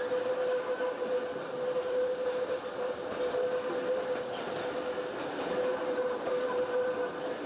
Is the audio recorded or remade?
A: recorded